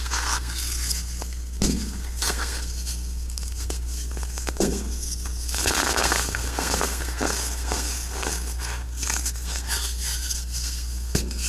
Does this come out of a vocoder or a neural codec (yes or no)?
yes